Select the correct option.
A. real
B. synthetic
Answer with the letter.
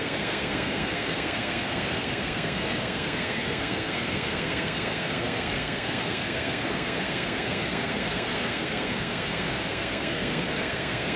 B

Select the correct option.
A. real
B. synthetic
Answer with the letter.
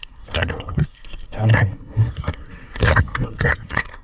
B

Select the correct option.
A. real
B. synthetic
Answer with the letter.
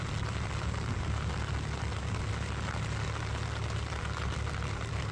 A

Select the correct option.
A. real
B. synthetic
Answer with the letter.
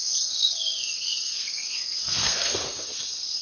B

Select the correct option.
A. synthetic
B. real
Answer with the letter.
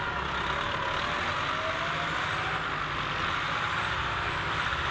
B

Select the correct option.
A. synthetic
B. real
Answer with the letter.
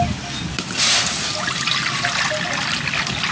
B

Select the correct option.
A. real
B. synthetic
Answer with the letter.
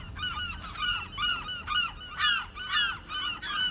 A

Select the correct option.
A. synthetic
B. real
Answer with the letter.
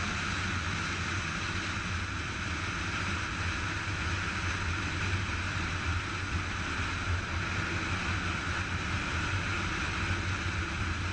B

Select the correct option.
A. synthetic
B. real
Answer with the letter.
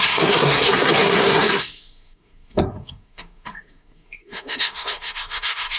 A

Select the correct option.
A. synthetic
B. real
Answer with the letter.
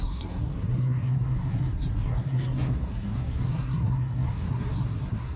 A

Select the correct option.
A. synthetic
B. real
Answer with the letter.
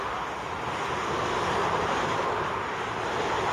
B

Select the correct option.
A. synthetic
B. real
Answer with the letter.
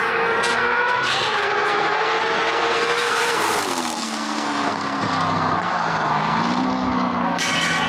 A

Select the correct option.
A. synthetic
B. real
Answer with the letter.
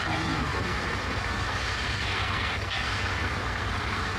A